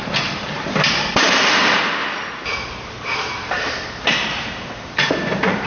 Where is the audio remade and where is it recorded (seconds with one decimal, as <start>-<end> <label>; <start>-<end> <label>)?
0.0-1.5 remade; 1.5-2.0 recorded; 2.0-5.1 remade; 5.1-5.7 recorded